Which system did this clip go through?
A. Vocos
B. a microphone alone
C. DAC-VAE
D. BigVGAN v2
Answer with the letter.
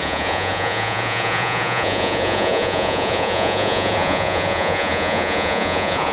A